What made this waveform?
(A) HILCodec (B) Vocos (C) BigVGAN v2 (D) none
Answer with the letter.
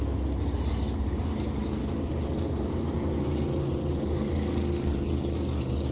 D